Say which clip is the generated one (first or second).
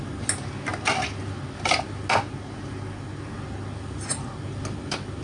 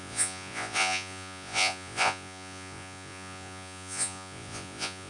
second